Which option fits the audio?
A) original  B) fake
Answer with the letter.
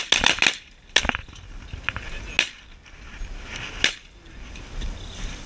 A